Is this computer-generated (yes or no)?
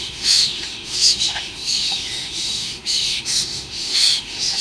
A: yes